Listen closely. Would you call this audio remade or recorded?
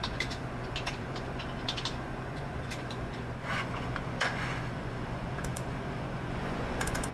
remade